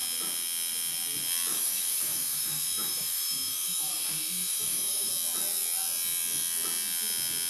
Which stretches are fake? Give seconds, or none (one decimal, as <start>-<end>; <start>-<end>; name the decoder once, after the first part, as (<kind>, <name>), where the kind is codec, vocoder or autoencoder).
1.5-5.1 (autoencoder, DAC-VAE)